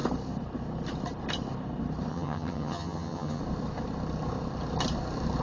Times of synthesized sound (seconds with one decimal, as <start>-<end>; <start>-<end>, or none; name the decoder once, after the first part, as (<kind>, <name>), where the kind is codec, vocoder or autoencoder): 2.1-3.4 (vocoder, HiFi-GAN)